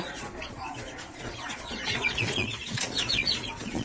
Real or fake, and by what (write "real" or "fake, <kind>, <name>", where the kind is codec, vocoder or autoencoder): fake, vocoder, Vocos